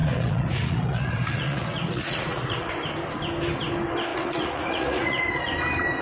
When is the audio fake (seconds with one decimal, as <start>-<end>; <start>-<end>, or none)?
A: 0.0-2.7; 4.1-5.2